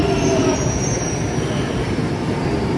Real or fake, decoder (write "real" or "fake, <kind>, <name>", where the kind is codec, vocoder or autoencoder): fake, vocoder, BigVGAN v2